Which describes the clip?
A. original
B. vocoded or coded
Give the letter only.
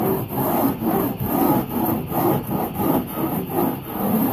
A